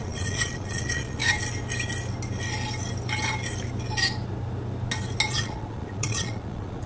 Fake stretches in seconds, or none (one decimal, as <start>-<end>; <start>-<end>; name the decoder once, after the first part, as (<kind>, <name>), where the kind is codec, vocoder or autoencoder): 0.0-1.2 (vocoder, Vocos); 5.3-6.9